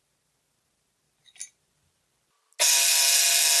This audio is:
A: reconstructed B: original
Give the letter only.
B